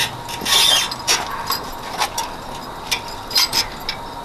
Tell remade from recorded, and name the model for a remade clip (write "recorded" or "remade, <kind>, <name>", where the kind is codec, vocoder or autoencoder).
recorded